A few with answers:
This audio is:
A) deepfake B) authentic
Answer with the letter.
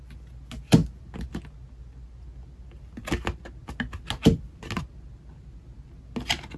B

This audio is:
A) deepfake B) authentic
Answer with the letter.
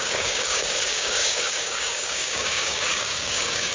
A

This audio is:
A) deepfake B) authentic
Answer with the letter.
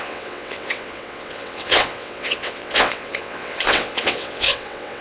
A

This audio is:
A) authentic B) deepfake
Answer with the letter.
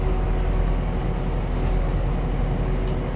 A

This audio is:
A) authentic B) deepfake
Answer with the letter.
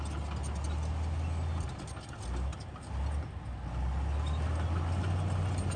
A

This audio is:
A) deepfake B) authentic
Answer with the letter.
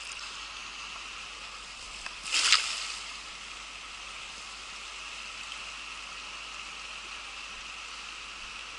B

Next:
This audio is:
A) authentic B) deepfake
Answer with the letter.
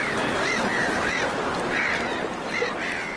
A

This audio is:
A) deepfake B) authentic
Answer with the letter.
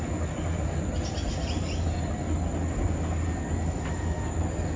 B